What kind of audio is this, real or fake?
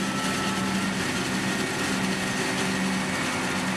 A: real